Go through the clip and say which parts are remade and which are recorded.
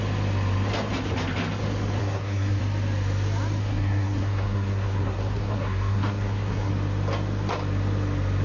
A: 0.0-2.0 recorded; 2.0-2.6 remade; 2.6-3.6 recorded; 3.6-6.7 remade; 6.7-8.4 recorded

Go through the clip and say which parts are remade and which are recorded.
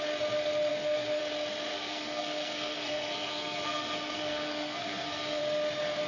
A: 0.0-0.7 recorded; 0.7-1.2 remade; 1.2-1.7 recorded; 1.7-5.4 remade; 5.4-6.1 recorded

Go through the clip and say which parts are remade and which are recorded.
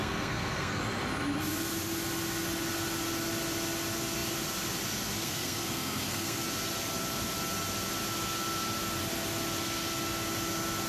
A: 0.0-0.8 remade; 0.8-5.2 recorded; 5.2-6.4 remade; 6.4-10.9 recorded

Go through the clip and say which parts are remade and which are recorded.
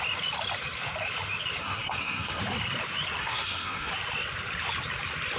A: 0.0-1.6 recorded; 1.6-2.4 remade; 2.4-3.2 recorded; 3.2-3.9 remade; 3.9-5.4 recorded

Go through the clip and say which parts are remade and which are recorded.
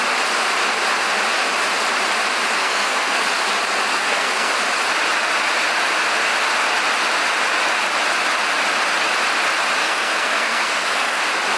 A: 0.0-2.6 recorded; 2.6-3.2 remade; 3.2-3.9 recorded; 3.9-4.5 remade; 4.5-9.8 recorded; 9.8-11.2 remade; 11.2-11.6 recorded